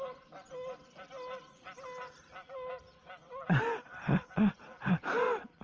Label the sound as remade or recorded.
recorded